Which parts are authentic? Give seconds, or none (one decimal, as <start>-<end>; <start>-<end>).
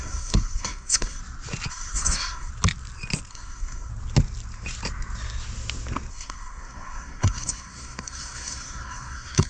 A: 1.2-1.7; 2.5-3.3; 3.9-6.1